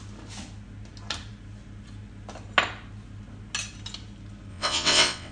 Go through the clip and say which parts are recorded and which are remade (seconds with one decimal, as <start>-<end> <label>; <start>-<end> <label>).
0.0-4.5 recorded; 4.5-5.3 remade